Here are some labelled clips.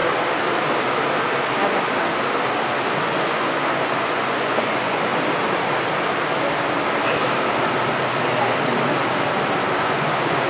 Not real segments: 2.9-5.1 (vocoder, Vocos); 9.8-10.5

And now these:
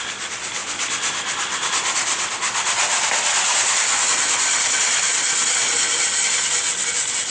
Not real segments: none

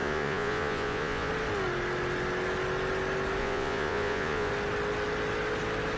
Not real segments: 0.0-1.3 (vocoder, Vocos); 3.4-4.5